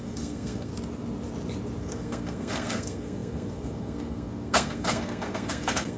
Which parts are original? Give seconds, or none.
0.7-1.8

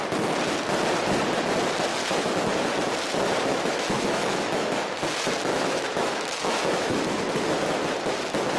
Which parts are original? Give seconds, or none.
0.0-1.9; 2.5-3.5; 5.0-5.5; 7.0-8.6

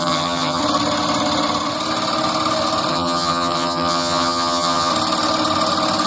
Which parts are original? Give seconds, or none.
0.6-2.9; 4.9-6.1